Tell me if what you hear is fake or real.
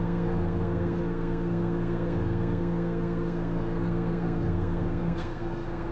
fake